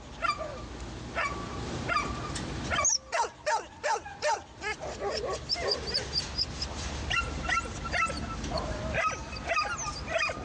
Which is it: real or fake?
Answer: real